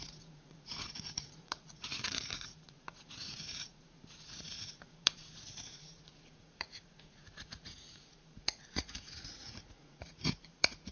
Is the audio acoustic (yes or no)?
no